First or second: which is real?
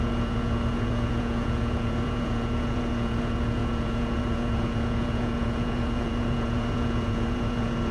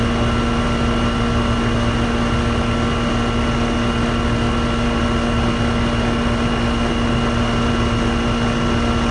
second